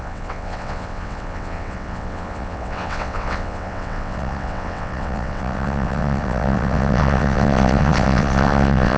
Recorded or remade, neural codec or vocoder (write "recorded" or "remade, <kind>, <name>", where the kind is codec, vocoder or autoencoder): remade, vocoder, WaveNeXt